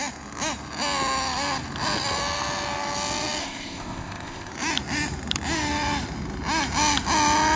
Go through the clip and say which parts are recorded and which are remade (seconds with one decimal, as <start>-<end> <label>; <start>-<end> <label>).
0.0-3.4 recorded; 3.4-4.5 remade; 4.5-7.6 recorded